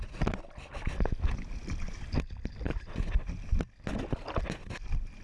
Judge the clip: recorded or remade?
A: recorded